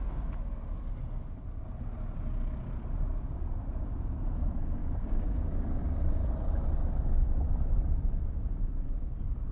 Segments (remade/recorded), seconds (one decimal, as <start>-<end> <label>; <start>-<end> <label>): 0.0-4.8 recorded; 4.8-5.8 remade; 5.8-9.5 recorded